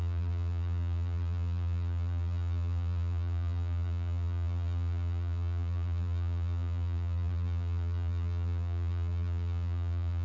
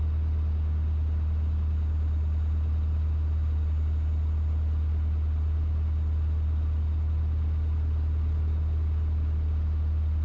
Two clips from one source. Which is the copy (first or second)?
first